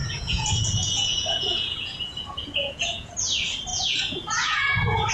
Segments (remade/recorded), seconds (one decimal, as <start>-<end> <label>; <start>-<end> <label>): 0.0-3.1 remade; 3.1-3.7 recorded; 3.7-5.1 remade